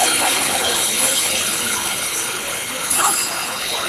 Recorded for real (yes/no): no